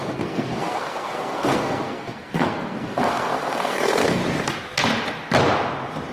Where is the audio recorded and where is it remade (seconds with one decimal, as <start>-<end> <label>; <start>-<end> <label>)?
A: 0.0-4.2 remade; 4.2-6.1 recorded